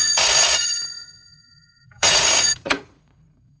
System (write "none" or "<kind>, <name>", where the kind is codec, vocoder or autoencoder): vocoder, Vocos